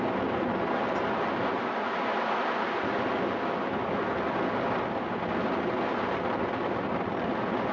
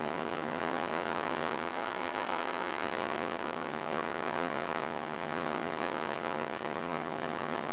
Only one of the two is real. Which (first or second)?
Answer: first